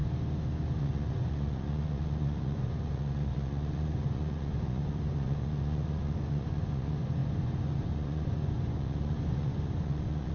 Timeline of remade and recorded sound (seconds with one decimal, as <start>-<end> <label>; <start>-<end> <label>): 0.0-0.8 recorded; 0.8-10.3 remade